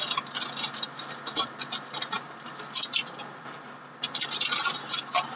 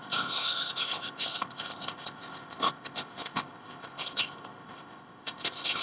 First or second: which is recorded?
first